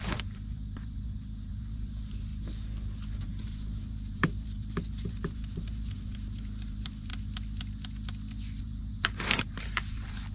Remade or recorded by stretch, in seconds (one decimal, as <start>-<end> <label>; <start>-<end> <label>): 0.0-2.3 remade; 2.3-3.1 recorded; 3.1-7.1 remade; 7.1-8.6 recorded; 8.6-10.3 remade